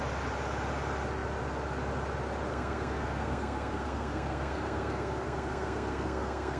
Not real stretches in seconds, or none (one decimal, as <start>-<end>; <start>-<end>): 2.5-6.6